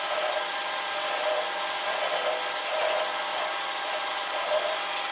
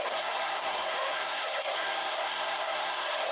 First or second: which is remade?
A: second